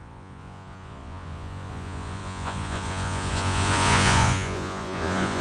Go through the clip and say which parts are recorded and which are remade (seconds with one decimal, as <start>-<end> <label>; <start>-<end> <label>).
0.0-5.4 remade